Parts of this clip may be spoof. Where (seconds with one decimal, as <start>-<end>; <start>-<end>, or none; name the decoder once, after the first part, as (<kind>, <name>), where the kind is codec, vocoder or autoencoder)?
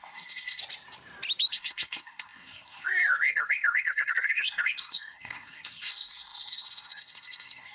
0.0-0.6 (codec, SNAC); 1.5-7.7